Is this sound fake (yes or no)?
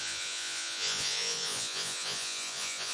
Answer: yes